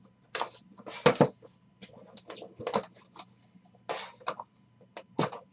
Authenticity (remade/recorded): recorded